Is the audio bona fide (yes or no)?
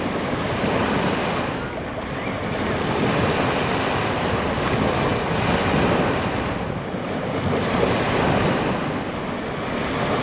yes